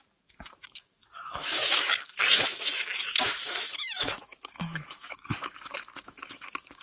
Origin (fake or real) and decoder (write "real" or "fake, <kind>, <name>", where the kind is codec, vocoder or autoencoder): fake, autoencoder, DAC-VAE